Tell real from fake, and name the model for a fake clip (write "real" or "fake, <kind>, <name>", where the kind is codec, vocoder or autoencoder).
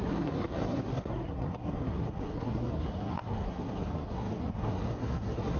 fake, codec, SNAC